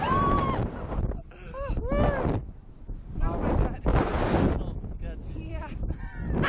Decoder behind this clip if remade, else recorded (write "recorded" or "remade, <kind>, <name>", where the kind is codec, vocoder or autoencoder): recorded